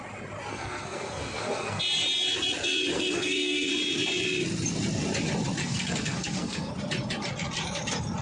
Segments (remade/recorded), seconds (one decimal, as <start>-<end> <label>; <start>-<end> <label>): 0.0-0.5 recorded; 0.5-1.8 remade; 1.8-2.9 recorded; 2.9-3.7 remade; 3.7-5.6 recorded; 5.6-6.7 remade; 6.7-8.2 recorded